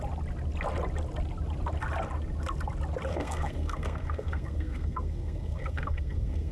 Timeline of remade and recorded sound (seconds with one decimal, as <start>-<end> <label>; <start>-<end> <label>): 0.0-3.1 recorded; 3.1-6.5 remade